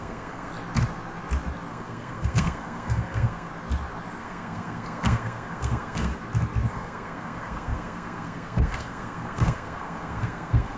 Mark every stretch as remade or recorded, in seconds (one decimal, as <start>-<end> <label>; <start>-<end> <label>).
0.0-0.5 remade; 0.5-1.7 recorded; 1.7-3.5 remade; 3.5-4.2 recorded; 4.2-6.1 remade; 6.1-6.7 recorded; 6.7-10.8 remade